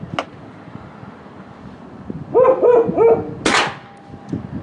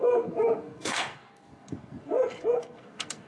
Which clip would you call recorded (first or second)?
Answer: first